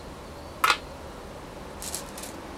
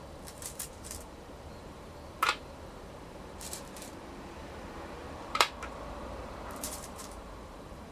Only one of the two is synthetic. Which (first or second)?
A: second